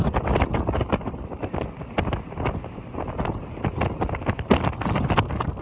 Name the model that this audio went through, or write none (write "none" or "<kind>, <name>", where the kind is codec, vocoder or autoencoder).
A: vocoder, BigVGAN v2